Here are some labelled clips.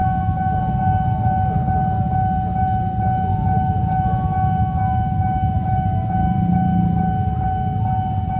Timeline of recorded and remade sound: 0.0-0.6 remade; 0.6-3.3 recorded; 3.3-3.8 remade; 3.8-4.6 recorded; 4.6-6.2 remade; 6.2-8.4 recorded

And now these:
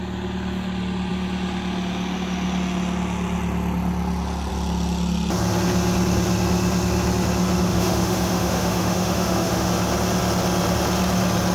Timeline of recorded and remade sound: 0.0-7.7 recorded; 7.7-9.7 remade; 9.7-11.5 recorded

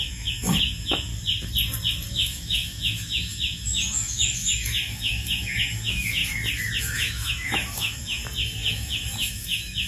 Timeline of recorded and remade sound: 0.0-1.1 remade; 1.1-2.1 recorded; 2.1-6.2 remade; 6.2-6.8 recorded; 6.8-8.2 remade; 8.2-8.7 recorded; 8.7-9.9 remade

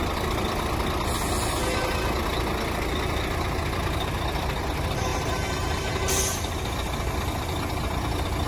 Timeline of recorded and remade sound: 0.0-8.5 recorded

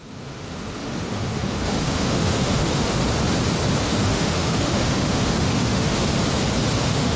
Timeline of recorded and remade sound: 0.0-3.0 remade; 3.0-3.8 recorded; 3.8-6.1 remade; 6.1-6.7 recorded; 6.7-7.2 remade

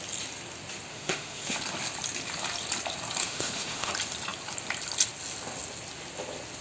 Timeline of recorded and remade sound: 0.0-0.9 recorded; 0.9-1.6 remade; 1.6-3.2 recorded; 3.2-3.9 remade; 3.9-6.6 recorded

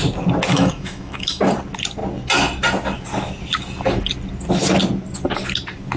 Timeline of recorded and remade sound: 0.0-0.5 recorded; 0.5-1.4 remade; 1.4-6.0 recorded